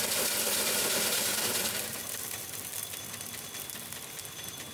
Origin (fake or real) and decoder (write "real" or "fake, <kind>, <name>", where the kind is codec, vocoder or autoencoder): real